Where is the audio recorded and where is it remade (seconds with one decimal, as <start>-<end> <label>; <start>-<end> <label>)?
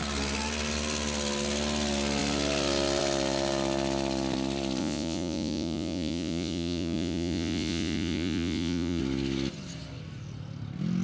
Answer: 0.0-4.8 recorded; 4.8-9.0 remade; 9.0-11.0 recorded